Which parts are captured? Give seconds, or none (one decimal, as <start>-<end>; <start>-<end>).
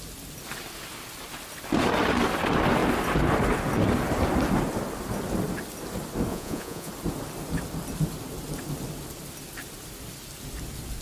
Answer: 0.0-6.3; 6.9-11.0